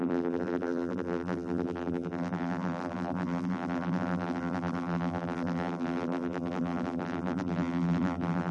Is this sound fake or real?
fake